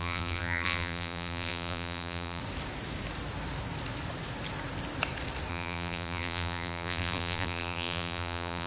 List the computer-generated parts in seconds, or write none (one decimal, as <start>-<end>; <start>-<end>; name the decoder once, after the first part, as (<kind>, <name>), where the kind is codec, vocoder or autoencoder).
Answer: 0.0-2.4 (vocoder, BigVGAN v2); 5.5-8.7